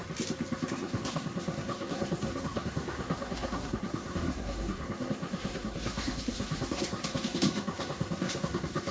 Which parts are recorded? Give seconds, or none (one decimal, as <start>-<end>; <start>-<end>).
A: 0.0-0.7